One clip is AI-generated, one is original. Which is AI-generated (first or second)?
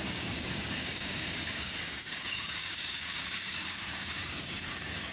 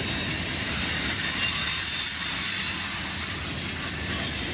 first